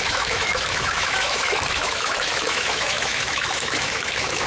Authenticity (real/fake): fake